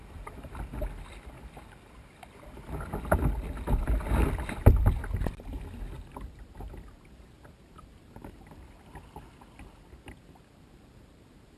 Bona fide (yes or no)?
yes